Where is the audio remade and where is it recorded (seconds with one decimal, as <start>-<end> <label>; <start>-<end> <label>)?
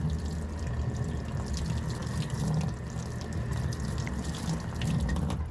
0.0-5.5 recorded